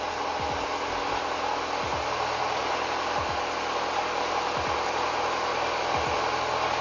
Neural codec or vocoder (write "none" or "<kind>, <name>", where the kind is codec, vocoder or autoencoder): none